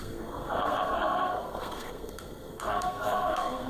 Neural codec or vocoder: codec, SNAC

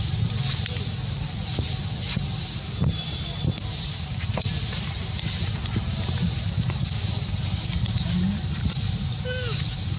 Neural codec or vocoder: none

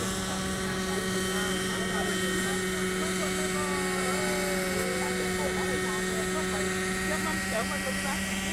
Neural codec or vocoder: none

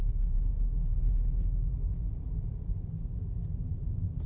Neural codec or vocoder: vocoder, BigVGAN v2